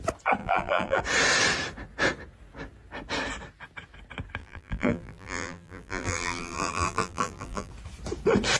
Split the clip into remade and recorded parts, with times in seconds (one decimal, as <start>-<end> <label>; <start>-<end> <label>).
0.0-0.4 recorded; 0.4-1.0 remade; 1.0-4.4 recorded; 4.4-7.7 remade; 7.7-8.6 recorded